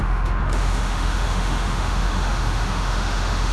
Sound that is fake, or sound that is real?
fake